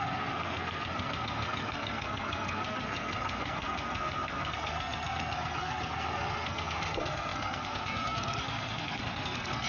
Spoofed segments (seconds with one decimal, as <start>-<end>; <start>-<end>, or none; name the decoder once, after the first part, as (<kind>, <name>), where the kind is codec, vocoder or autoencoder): 0.0-9.7 (codec, SNAC)